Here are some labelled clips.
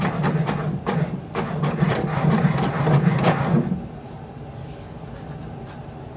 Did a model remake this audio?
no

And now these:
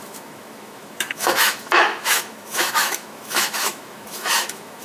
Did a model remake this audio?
yes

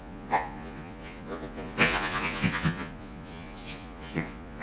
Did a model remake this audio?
yes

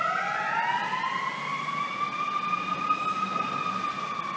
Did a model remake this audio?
no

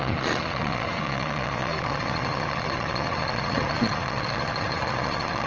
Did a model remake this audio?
yes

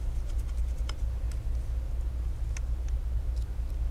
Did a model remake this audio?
no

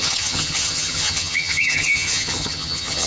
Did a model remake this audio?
yes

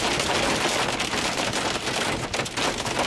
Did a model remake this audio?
no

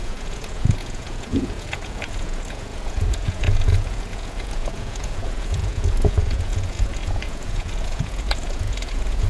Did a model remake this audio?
yes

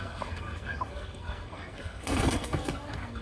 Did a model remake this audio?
yes